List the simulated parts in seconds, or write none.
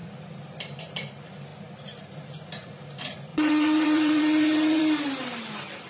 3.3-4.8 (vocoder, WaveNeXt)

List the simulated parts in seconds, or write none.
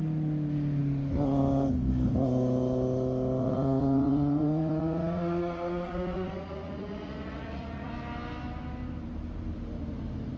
3.4-7.9 (vocoder, Vocos)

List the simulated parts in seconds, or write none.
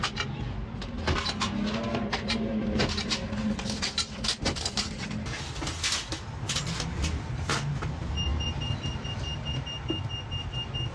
none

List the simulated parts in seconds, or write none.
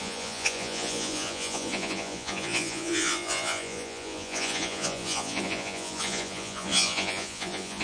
0.0-7.8 (vocoder, Vocos)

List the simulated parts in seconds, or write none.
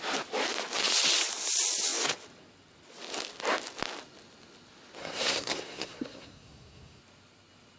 5.0-7.0 (codec, SNAC)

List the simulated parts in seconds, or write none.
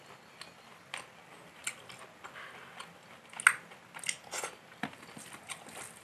none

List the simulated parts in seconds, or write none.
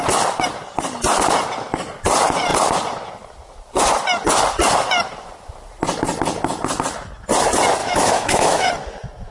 7.8-8.7 (autoencoder, DAC-VAE)